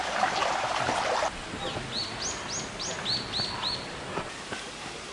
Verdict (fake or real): real